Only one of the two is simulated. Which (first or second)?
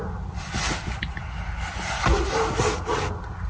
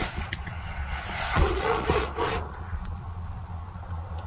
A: second